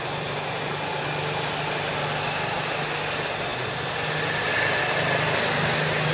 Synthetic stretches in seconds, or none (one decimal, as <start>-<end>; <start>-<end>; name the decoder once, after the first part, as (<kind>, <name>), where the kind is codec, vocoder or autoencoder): none

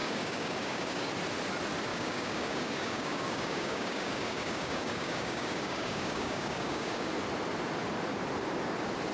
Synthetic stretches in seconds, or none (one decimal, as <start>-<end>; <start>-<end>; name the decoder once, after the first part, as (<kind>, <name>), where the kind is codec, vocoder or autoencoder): 0.0-1.1 (codec, DAC); 1.9-7.1

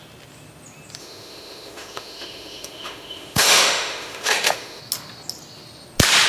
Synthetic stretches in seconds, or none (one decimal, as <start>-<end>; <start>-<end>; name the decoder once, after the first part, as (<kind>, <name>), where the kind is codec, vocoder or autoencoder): 1.0-4.8 (autoencoder, DAC-VAE)

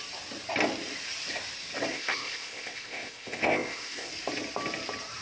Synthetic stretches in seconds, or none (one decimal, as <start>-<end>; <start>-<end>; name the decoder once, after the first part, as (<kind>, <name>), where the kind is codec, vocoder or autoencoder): 1.9-4.1 (codec, ZipCodec)

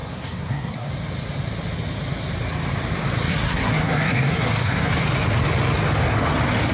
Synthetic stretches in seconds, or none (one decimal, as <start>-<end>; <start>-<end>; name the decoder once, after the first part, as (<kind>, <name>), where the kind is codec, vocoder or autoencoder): 0.0-0.9 (codec, SNAC); 3.3-4.9

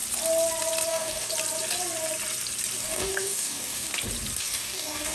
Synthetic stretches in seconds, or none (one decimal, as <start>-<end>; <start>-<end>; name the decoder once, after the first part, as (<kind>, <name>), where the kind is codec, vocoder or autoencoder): 0.9-1.3 (codec, DAC); 2.8-3.9; 4.4-5.1

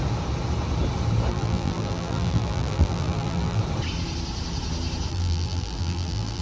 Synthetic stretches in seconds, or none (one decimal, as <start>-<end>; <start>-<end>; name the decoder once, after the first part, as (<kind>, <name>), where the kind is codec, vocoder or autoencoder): 1.3-3.6 (vocoder, BigVGAN v2); 5.1-6.4